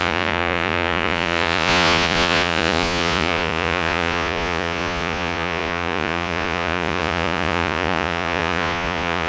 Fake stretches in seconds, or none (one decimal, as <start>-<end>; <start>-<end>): 0.0-9.3